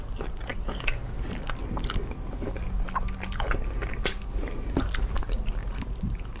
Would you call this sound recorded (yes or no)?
yes